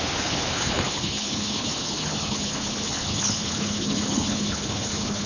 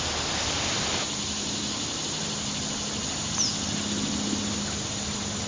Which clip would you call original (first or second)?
second